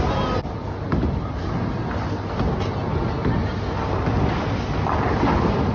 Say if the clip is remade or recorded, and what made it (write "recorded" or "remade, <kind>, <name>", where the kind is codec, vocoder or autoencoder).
recorded